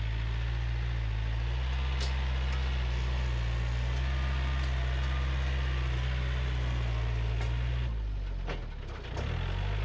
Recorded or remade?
recorded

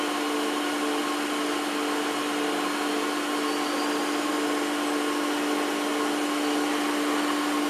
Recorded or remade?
recorded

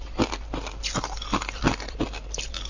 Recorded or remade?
recorded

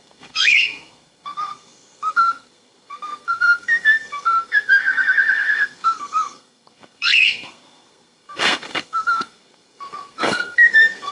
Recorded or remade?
remade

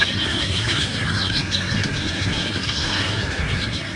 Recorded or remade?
remade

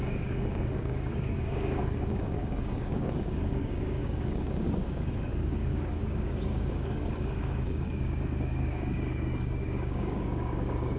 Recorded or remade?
remade